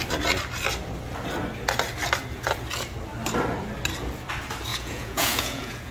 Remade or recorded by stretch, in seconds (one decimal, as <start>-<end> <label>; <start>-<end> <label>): 0.0-4.7 recorded; 4.7-5.9 remade